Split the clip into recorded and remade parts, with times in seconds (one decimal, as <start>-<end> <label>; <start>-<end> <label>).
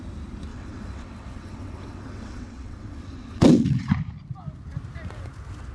0.0-0.5 recorded; 0.5-3.9 remade; 3.9-5.7 recorded